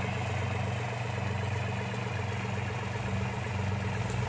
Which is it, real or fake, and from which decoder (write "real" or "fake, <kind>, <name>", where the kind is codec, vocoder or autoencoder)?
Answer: real